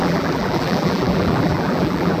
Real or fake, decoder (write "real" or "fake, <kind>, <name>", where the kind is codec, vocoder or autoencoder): fake, vocoder, BigVGAN v2